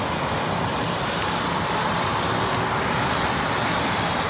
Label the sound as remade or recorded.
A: recorded